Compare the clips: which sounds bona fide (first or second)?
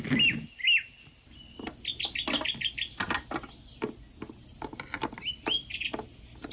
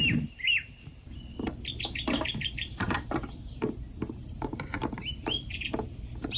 first